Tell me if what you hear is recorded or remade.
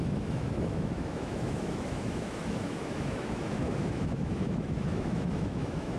remade